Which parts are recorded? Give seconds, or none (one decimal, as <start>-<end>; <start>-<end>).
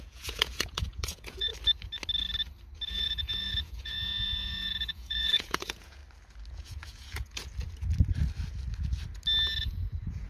1.5-2.9; 6.0-6.5; 7.5-9.6